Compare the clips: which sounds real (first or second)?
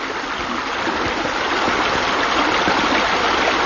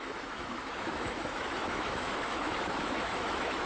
first